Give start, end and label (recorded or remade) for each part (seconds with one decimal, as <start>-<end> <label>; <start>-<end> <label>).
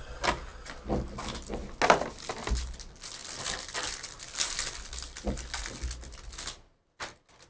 0.0-7.5 recorded